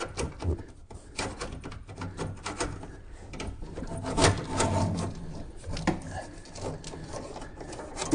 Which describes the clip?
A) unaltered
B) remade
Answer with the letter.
A